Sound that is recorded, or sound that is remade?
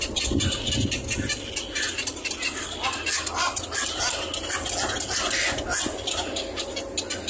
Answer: recorded